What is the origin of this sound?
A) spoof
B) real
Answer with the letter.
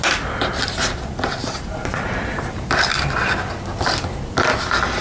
B